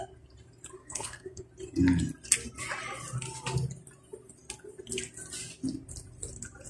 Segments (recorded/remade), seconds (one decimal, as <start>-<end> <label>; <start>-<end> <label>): 0.0-0.8 recorded; 0.8-1.4 remade; 1.4-6.7 recorded